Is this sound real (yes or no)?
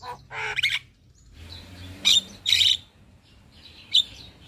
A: no